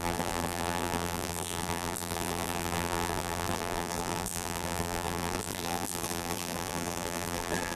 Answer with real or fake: fake